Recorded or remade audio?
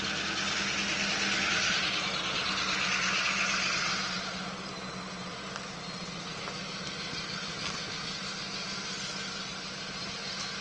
recorded